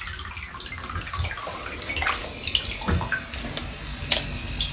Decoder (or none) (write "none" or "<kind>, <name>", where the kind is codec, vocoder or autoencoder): none